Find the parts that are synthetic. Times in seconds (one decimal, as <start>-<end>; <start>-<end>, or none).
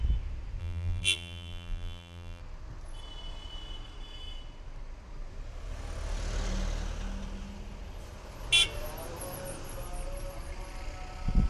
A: 0.6-2.4